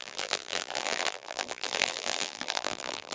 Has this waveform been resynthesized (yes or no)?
yes